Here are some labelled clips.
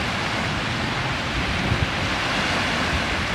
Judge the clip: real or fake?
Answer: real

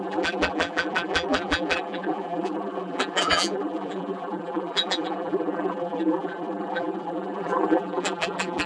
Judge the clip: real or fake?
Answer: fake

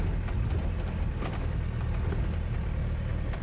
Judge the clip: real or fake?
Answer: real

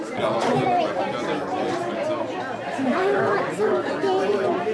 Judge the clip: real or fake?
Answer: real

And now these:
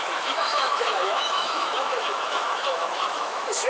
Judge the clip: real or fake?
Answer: fake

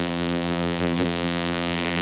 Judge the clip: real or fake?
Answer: fake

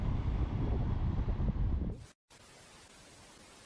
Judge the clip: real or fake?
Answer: real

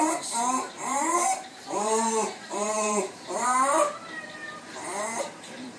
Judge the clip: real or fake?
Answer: fake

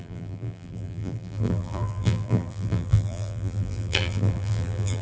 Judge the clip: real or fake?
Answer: fake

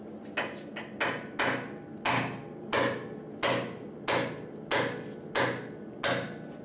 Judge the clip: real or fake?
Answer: real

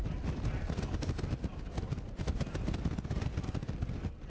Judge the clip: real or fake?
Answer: real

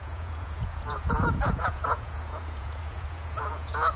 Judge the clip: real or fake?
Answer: fake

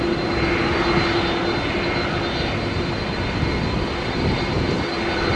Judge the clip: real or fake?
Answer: real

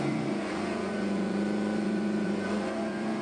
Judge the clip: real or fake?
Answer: fake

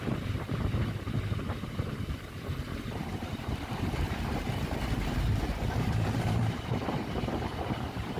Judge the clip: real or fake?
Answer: fake